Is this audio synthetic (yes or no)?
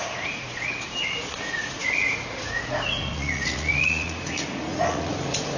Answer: yes